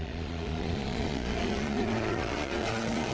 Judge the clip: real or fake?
fake